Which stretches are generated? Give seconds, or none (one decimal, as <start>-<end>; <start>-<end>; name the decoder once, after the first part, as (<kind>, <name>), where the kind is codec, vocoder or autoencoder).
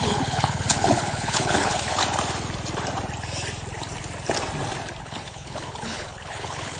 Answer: 0.0-2.0 (codec, HILCodec); 5.0-6.8